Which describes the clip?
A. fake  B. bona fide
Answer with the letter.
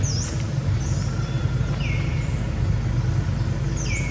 B